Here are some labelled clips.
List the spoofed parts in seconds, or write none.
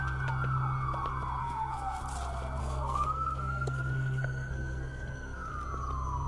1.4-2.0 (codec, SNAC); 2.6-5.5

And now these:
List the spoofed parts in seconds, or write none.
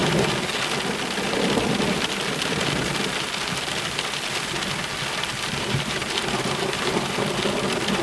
0.0-0.5 (vocoder, BigVGAN v2); 5.3-7.1